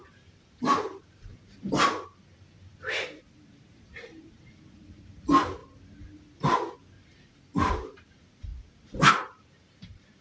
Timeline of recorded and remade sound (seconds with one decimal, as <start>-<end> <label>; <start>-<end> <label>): 0.0-5.6 remade; 5.6-7.0 recorded; 7.0-8.5 remade; 8.5-9.1 recorded; 9.1-10.2 remade

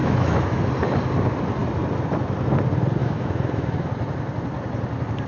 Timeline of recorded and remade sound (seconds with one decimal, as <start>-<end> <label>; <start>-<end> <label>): 0.0-0.6 remade; 0.6-3.0 recorded; 3.0-3.9 remade; 3.9-5.3 recorded

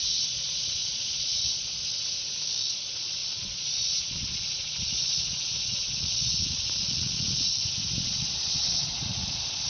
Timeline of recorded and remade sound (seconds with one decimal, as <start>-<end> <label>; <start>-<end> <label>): 0.0-1.8 remade; 1.8-2.7 recorded; 2.7-7.5 remade; 7.5-8.0 recorded; 8.0-9.7 remade

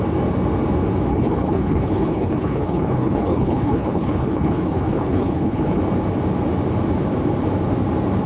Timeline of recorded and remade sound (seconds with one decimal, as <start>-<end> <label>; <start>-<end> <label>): 0.0-1.1 recorded; 1.1-5.8 remade; 5.8-8.3 recorded

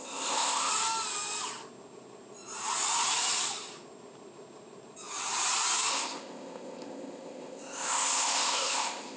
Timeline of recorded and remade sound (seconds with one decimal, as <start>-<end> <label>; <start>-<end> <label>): 0.0-0.7 remade; 0.7-5.9 recorded; 5.9-9.2 remade

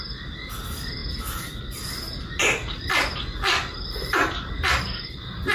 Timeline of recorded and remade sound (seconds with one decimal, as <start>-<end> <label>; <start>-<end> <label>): 0.0-5.5 recorded